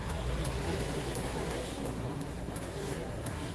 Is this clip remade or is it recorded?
remade